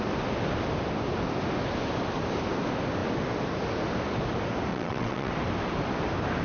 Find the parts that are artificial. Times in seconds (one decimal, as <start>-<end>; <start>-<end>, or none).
4.7-5.3